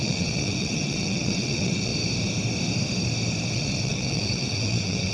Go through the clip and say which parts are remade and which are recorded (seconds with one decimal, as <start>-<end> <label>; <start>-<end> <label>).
0.0-1.9 remade; 1.9-3.5 recorded; 3.5-5.1 remade